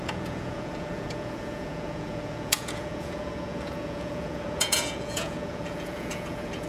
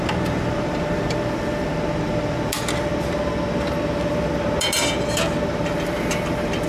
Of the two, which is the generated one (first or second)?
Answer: first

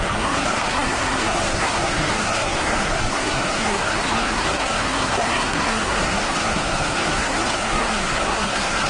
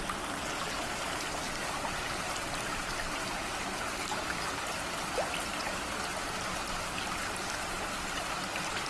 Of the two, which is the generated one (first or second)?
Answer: first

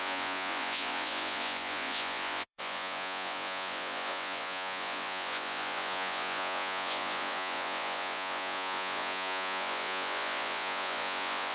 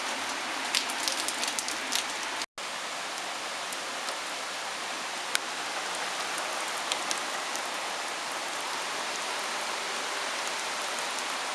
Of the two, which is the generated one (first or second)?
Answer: first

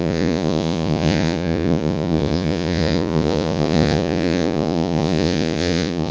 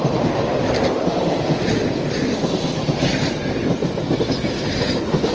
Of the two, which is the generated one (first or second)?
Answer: first